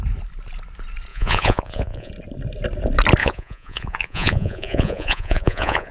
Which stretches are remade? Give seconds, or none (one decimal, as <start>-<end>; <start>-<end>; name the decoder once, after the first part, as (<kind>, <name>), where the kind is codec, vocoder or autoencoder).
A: 1.1-2.1 (vocoder, Vocos); 3.2-5.9